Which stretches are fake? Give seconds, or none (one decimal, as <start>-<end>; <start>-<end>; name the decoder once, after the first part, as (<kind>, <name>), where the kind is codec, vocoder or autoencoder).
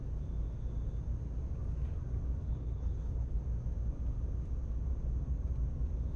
2.4-3.4 (codec, HILCodec)